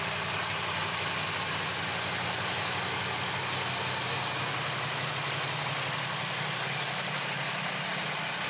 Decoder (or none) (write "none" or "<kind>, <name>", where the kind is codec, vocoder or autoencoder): none